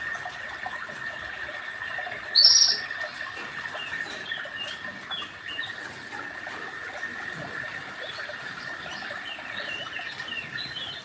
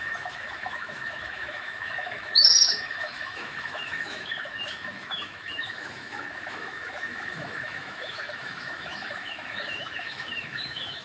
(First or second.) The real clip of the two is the first